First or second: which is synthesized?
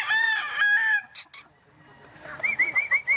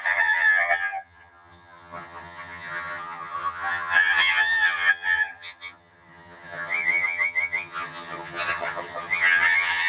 second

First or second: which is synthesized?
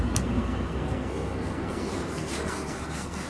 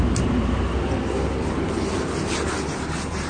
first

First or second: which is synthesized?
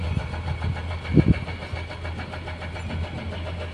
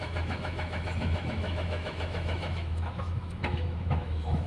second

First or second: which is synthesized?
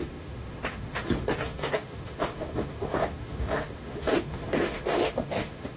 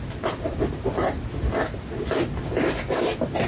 first